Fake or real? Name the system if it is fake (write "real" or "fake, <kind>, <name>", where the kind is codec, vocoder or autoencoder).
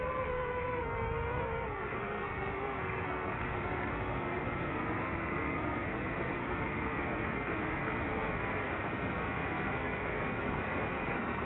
fake, codec, SNAC